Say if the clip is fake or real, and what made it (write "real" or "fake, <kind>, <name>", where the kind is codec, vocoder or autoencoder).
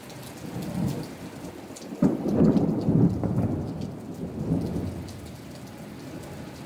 real